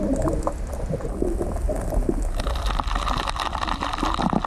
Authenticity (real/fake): real